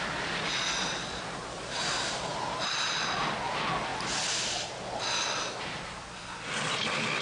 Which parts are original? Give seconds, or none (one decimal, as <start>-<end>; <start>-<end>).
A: 0.0-7.2